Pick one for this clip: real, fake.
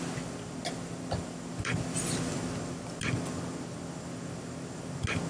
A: real